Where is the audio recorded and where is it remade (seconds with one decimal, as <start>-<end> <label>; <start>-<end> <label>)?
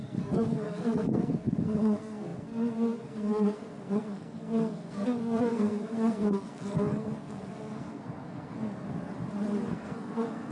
0.0-9.1 remade; 9.1-9.7 recorded; 9.7-10.5 remade